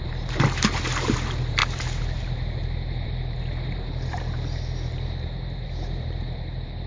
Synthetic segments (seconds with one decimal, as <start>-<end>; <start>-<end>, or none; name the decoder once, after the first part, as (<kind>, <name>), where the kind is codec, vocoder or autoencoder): 0.0-6.9 (vocoder, BigVGAN v2)